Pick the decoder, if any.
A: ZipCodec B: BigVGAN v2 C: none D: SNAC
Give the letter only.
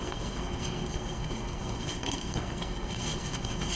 D